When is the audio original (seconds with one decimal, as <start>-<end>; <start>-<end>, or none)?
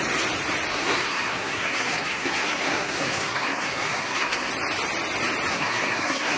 0.0-0.7; 4.5-5.5